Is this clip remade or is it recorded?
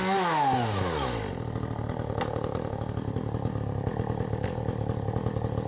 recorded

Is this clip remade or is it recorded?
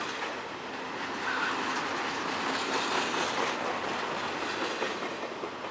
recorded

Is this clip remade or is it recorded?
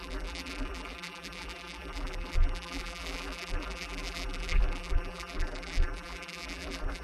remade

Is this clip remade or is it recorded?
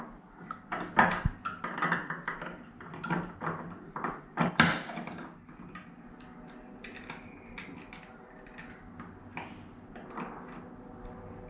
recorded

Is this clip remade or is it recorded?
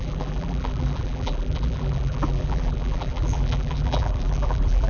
remade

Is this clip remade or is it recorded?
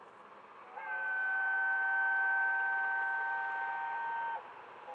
recorded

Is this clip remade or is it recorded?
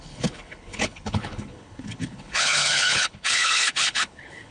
remade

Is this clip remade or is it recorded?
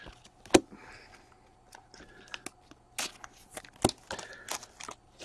recorded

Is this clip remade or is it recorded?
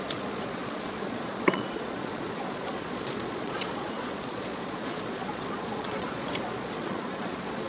remade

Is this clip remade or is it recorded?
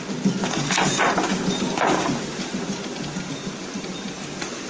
recorded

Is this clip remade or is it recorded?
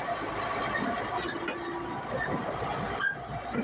recorded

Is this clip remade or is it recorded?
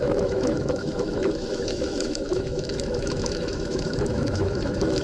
remade